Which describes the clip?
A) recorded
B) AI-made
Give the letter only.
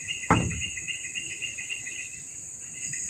A